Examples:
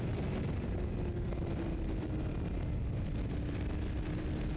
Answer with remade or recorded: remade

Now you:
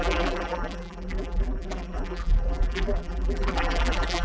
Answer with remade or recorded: remade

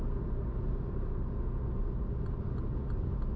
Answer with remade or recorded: recorded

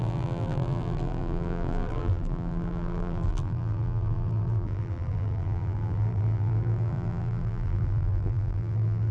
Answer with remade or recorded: remade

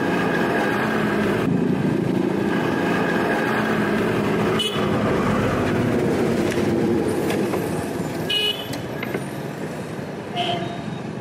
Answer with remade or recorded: remade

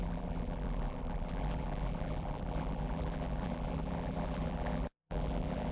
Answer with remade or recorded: remade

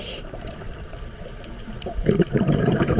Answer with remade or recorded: remade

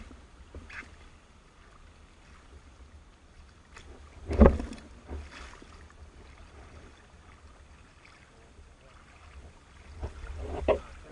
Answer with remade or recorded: recorded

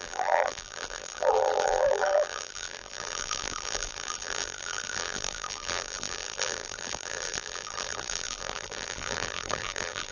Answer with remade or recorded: remade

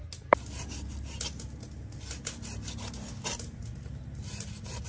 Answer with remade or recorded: recorded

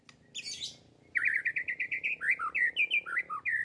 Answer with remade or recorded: recorded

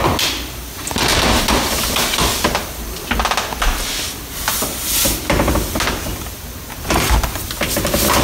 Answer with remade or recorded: recorded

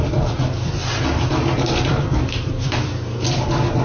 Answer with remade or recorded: remade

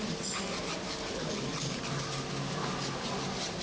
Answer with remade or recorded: recorded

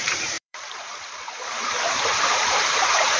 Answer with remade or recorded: remade